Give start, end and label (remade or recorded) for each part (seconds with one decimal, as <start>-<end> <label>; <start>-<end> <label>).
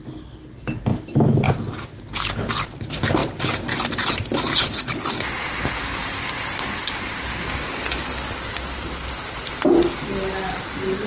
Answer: 0.0-11.1 recorded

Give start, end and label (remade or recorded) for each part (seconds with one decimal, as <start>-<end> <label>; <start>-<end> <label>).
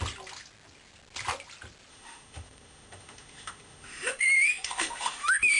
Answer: 0.0-1.9 recorded; 1.9-5.6 remade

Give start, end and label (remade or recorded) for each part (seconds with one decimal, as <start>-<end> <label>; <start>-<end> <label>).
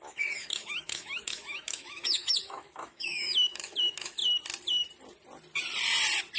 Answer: 0.0-4.2 remade; 4.2-6.4 recorded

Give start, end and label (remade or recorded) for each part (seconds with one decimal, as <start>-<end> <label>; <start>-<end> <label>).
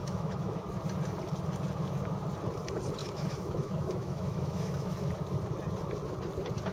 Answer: 0.0-0.6 remade; 0.6-3.0 recorded; 3.0-5.1 remade; 5.1-6.7 recorded